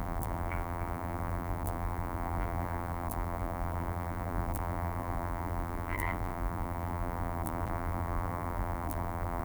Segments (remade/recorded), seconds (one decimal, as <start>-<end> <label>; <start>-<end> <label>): 0.0-9.4 remade